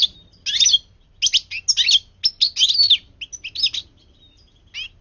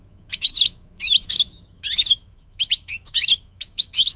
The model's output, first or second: second